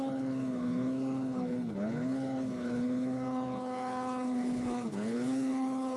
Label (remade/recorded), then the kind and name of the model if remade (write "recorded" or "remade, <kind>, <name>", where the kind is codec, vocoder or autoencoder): remade, codec, HILCodec